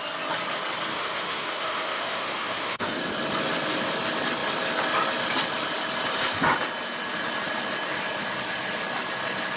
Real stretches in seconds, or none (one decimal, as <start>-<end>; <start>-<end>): 0.0-0.9; 3.0-9.6